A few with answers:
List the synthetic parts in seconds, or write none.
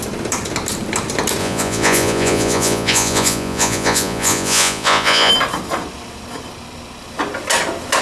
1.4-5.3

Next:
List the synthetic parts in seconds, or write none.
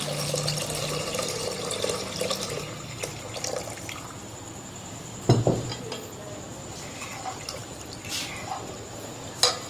none